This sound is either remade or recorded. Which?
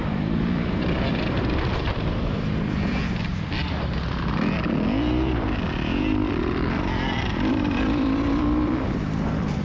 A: remade